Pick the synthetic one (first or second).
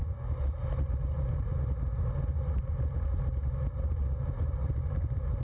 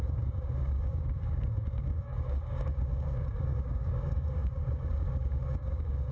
second